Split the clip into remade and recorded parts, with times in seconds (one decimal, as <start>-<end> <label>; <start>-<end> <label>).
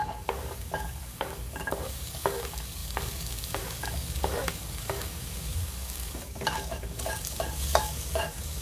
0.0-8.6 remade